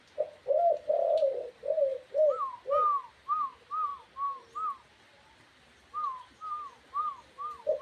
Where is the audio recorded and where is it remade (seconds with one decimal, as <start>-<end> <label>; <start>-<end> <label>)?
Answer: 0.0-7.8 recorded

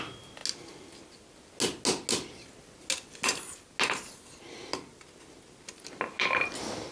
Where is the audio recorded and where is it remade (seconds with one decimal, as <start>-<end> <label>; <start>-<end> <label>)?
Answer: 0.0-6.9 recorded

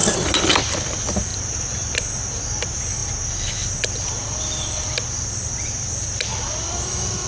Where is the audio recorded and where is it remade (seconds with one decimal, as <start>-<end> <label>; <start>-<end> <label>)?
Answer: 0.0-7.3 remade

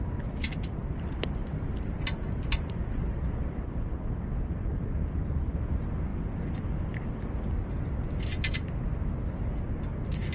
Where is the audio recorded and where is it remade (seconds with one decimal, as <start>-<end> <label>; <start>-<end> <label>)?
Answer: 0.0-1.4 recorded; 1.4-5.1 remade; 5.1-6.1 recorded; 6.1-7.0 remade; 7.0-10.3 recorded